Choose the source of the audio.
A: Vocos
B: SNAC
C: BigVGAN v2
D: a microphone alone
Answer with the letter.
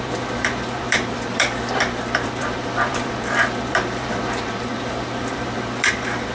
C